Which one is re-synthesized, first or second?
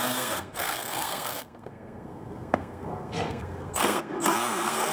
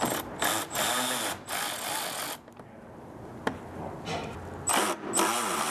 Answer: first